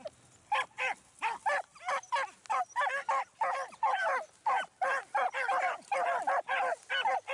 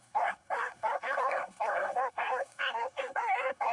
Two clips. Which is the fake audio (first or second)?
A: second